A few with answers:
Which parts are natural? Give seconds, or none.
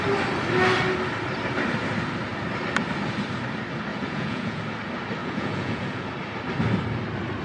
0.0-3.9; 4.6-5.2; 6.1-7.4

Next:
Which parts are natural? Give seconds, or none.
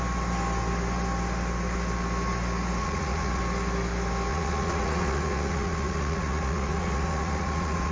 0.0-2.8; 3.4-4.3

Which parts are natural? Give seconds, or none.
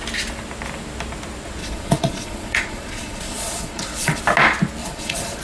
0.0-1.6; 4.2-4.8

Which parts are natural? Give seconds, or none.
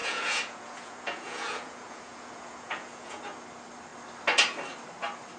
3.2-5.4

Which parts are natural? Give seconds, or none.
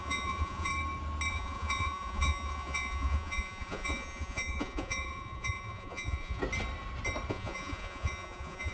0.7-1.3; 6.4-7.3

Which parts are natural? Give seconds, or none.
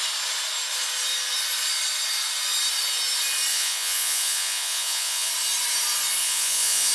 0.0-3.5; 5.3-6.2